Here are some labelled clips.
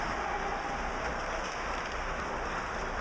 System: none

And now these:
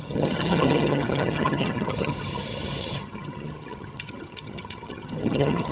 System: vocoder, HiFi-GAN